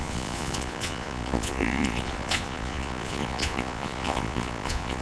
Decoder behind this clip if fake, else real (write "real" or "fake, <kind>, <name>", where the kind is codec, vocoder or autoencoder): fake, vocoder, Vocos